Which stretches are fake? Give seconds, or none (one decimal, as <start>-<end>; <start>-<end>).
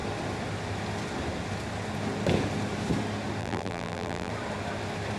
3.4-4.3